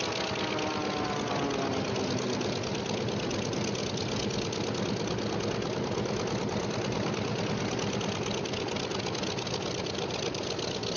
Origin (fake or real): real